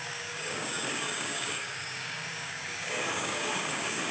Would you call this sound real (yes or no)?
no